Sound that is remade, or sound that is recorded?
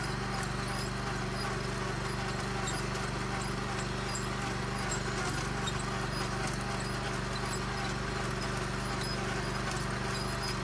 recorded